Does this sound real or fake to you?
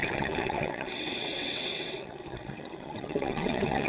fake